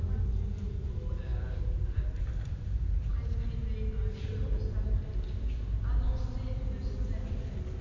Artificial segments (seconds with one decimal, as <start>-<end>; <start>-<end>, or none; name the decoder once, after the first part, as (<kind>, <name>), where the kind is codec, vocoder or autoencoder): none

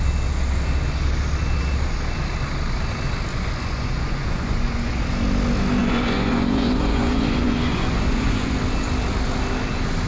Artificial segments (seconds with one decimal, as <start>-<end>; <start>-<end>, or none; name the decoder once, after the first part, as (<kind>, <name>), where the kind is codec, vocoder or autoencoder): 3.3-5.0 (vocoder, Vocos); 5.8-8.6

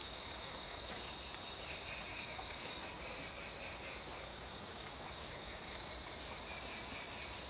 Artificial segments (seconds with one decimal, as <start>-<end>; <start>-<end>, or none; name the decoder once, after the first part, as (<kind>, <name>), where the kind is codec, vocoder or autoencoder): 0.0-0.9 (autoencoder, DAC-VAE); 2.1-2.7; 4.3-5.9

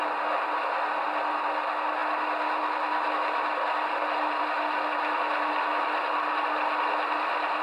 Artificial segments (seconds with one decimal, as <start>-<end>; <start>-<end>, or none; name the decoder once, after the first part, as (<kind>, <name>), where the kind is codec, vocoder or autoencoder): none

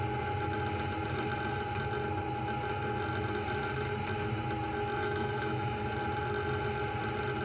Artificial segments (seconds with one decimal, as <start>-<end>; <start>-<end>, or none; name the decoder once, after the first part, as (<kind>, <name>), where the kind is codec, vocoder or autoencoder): 5.0-5.9 (autoencoder, DAC-VAE)

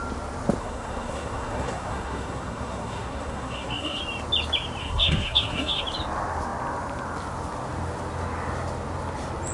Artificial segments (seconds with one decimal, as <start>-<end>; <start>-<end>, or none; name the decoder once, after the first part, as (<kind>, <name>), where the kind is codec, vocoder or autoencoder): 0.6-4.0 (codec, SNAC); 4.8-5.8

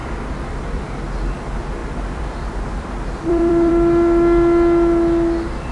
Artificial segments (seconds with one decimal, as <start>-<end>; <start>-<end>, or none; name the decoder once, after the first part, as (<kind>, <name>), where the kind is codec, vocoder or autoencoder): 0.0-0.8 (vocoder, BigVGAN v2); 1.8-3.7